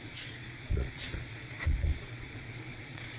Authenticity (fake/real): fake